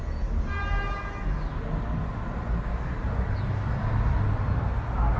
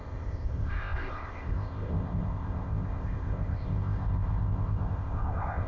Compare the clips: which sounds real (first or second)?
first